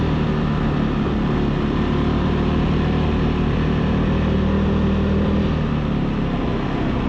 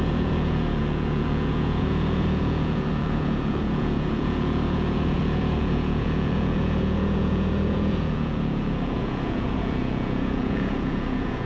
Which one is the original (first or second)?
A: first